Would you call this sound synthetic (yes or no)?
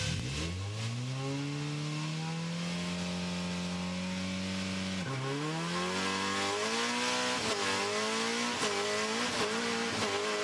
no